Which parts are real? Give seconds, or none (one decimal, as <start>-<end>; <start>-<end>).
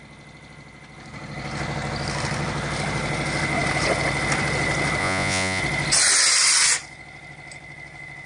0.0-5.0; 5.6-8.3